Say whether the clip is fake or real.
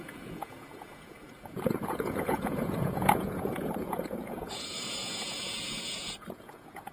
fake